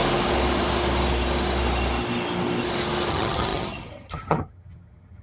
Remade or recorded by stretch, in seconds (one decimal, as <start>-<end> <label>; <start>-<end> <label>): 0.0-3.1 recorded; 3.1-5.2 remade